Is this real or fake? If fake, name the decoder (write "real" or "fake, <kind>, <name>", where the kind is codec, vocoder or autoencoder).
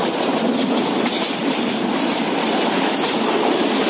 fake, vocoder, BigVGAN v2